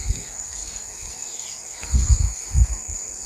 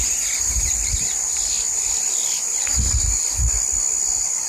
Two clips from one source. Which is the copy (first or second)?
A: first